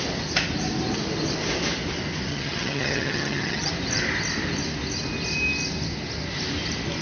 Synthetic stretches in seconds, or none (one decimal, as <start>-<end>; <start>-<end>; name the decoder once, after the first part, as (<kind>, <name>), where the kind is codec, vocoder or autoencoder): 2.3-3.7 (vocoder, HiFi-GAN)